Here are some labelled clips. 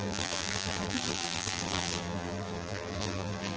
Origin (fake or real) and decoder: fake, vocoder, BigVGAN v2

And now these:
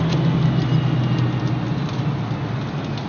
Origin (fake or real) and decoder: real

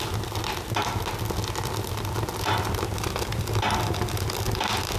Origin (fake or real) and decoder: real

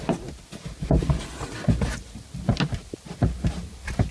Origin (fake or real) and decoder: real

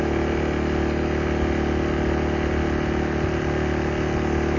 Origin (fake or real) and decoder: real